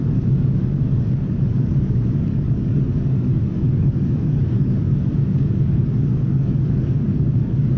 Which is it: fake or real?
fake